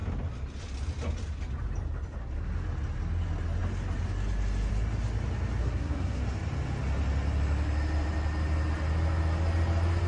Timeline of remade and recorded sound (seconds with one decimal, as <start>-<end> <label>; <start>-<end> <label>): 0.0-5.6 recorded; 5.6-6.2 remade; 6.2-10.1 recorded